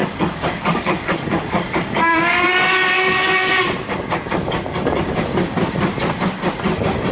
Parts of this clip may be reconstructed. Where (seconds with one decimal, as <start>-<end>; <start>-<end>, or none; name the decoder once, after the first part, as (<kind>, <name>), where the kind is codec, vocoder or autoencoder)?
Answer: 0.0-3.5 (codec, DAC)